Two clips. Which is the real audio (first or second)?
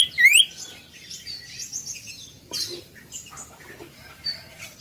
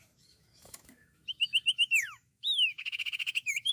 first